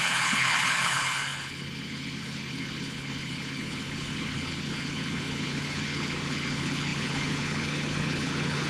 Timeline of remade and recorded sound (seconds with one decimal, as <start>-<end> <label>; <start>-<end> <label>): 0.0-8.7 remade